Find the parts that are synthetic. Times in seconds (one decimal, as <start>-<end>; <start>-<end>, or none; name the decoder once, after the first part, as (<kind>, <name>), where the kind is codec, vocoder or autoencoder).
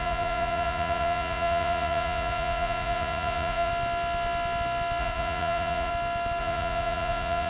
0.0-3.7 (vocoder, Vocos); 5.0-5.9; 6.4-7.5